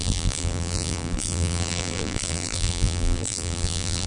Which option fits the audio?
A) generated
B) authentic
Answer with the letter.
A